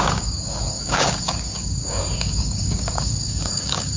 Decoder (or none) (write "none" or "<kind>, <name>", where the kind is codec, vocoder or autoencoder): codec, DAC